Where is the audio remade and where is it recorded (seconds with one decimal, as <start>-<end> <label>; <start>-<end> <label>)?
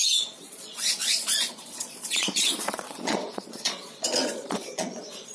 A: 0.0-5.3 remade